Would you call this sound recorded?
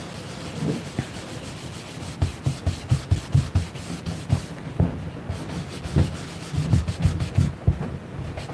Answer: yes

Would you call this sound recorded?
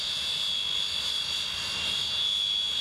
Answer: yes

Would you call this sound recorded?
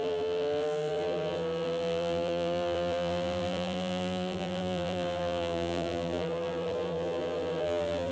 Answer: no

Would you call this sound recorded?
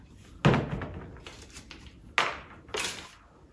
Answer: yes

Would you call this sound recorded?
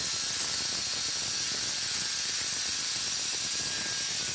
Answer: yes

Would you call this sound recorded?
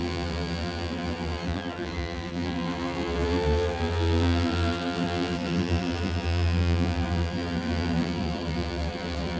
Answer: no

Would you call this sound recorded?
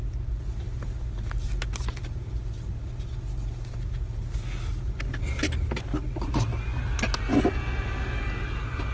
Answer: yes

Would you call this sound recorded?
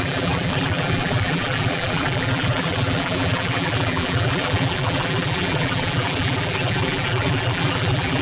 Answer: no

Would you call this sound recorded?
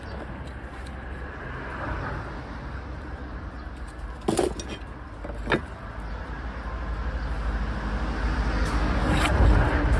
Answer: yes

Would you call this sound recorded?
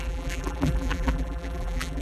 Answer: no